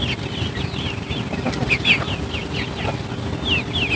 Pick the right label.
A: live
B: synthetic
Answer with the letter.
A